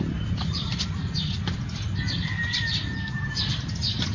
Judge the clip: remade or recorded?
remade